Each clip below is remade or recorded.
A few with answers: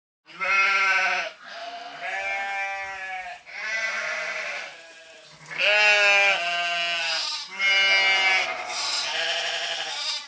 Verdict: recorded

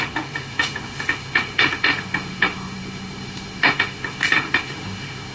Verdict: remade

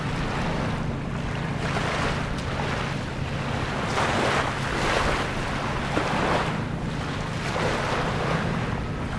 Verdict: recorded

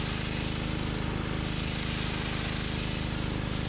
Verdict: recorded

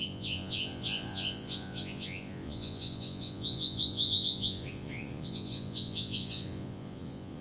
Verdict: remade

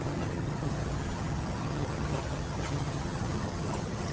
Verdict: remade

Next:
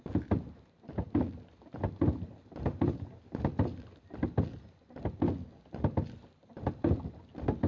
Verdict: recorded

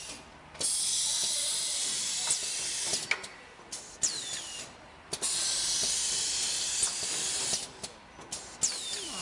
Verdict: recorded